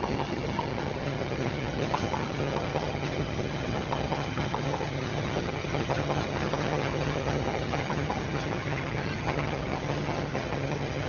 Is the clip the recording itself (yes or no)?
no